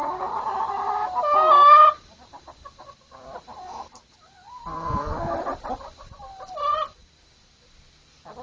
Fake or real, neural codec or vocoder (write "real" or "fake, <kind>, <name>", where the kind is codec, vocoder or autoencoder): real